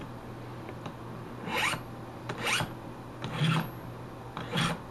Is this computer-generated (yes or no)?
no